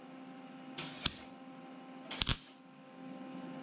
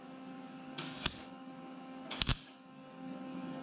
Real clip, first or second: first